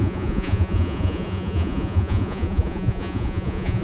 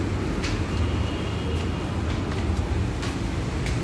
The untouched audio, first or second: second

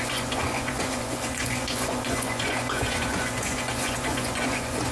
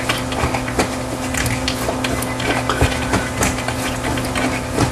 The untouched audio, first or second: second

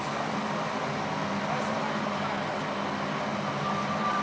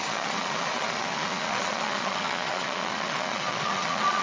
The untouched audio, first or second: first